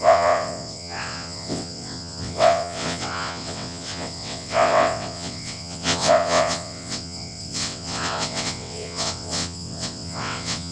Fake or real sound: fake